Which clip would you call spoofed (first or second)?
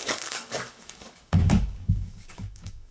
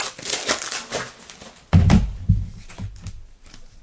first